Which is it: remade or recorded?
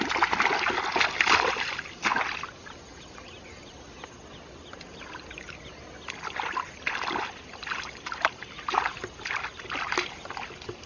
recorded